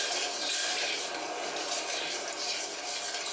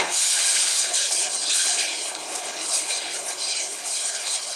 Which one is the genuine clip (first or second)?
first